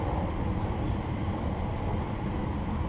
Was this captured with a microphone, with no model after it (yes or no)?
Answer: yes